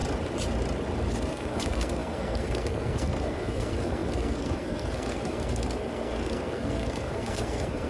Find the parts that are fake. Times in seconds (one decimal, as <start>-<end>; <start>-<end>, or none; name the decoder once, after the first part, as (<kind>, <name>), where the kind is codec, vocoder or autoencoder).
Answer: 1.2-7.9 (codec, SNAC)